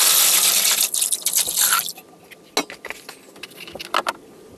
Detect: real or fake real